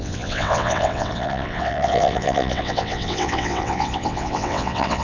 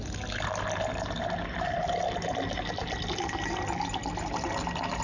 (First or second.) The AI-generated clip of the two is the first